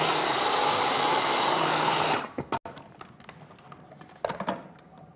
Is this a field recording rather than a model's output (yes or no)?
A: yes